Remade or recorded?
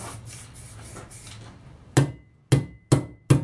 recorded